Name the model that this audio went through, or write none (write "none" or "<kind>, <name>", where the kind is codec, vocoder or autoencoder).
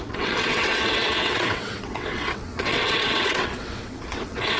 vocoder, WaveNeXt